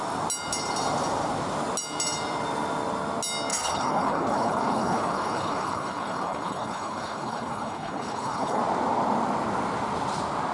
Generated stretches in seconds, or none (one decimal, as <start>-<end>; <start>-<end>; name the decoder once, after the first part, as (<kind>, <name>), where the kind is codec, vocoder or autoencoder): 3.5-8.6 (codec, HILCodec)